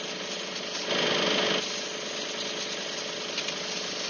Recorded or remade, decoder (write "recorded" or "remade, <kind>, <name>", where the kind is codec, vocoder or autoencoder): recorded